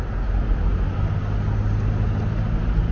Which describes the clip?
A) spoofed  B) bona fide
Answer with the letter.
B